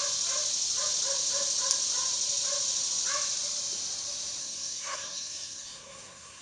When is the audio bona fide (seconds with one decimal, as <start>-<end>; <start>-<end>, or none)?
0.0-4.4